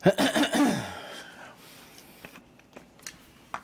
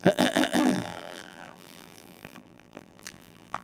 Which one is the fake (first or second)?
second